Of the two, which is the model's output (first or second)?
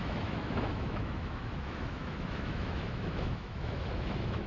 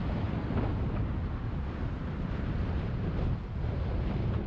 first